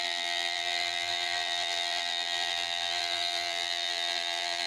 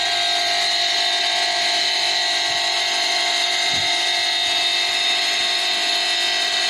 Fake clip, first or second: first